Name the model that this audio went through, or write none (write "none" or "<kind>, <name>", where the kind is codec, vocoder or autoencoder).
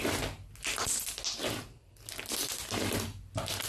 none